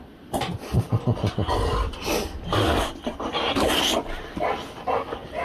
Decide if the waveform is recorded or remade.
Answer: recorded